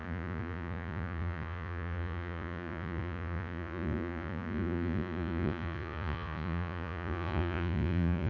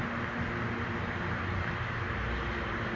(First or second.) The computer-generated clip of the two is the first